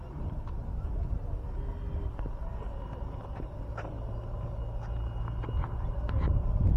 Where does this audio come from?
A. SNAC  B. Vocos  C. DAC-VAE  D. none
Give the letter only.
D